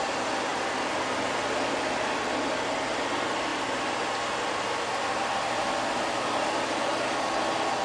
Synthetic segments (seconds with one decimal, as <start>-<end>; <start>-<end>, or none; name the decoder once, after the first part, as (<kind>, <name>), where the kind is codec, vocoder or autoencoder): 0.5-2.4 (vocoder, BigVGAN v2); 3.5-6.7